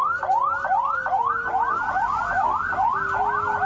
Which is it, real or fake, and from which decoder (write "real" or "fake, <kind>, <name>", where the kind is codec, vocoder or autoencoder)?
real